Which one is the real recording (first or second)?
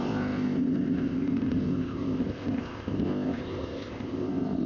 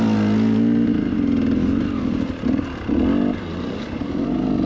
second